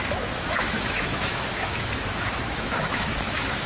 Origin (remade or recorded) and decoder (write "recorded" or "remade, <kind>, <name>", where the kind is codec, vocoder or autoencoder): remade, autoencoder, DAC-VAE